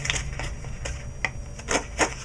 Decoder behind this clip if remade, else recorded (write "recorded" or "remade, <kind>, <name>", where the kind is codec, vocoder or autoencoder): recorded